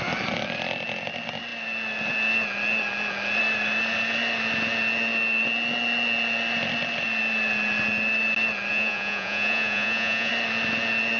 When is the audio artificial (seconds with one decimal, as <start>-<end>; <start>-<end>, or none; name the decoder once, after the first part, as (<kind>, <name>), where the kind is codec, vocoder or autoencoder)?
8.7-10.3 (vocoder, Vocos)